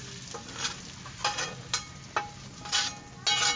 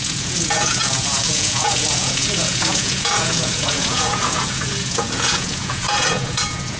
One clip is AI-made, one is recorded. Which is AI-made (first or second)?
second